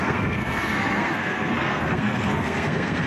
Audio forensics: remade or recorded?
remade